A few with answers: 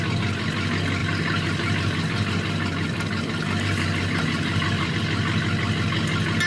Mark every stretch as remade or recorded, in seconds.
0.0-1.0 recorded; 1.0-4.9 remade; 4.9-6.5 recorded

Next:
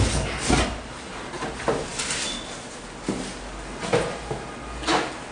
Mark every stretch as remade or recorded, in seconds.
0.0-5.3 recorded